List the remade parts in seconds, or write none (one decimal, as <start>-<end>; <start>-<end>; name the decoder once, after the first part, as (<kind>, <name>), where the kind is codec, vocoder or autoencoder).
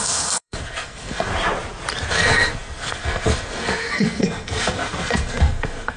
0.0-1.3 (codec, SNAC); 2.1-6.0